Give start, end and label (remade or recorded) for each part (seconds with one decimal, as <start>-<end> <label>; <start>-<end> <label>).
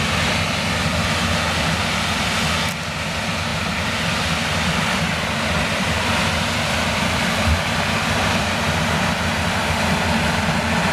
0.0-3.5 recorded; 3.5-8.4 remade; 8.4-10.9 recorded